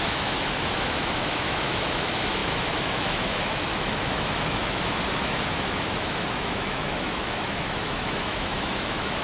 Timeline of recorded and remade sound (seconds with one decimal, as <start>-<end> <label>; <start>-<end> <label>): 0.0-9.2 remade

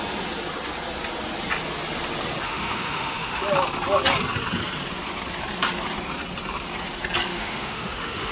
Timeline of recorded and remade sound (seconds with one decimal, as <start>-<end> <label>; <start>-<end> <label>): 0.0-2.5 recorded; 2.5-3.4 remade; 3.4-7.3 recorded; 7.3-8.3 remade